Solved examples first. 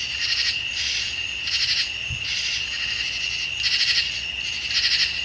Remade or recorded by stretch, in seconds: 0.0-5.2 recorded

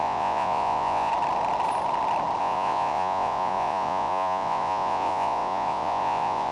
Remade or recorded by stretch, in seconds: 0.0-1.1 remade; 1.1-2.4 recorded; 2.4-6.5 remade

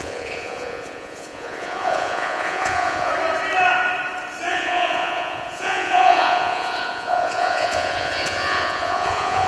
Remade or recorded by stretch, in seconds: 0.0-3.1 remade; 3.1-4.5 recorded; 4.5-9.5 remade

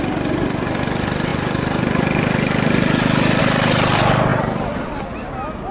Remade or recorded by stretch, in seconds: 0.0-5.7 recorded

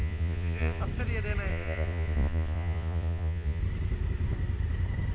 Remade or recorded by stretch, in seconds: 0.0-0.8 remade; 0.8-1.5 recorded; 1.5-3.6 remade; 3.6-5.1 recorded

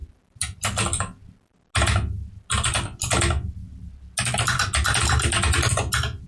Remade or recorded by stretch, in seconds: 0.0-6.3 recorded